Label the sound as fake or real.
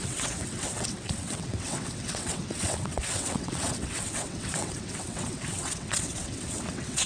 fake